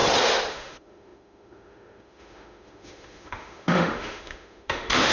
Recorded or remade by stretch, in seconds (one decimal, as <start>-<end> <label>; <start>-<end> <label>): 0.0-0.5 recorded; 0.5-5.1 remade